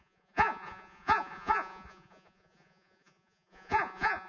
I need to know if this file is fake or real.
fake